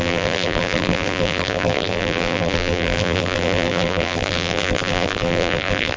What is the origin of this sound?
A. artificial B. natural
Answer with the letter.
A